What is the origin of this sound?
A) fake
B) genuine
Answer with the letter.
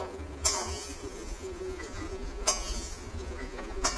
A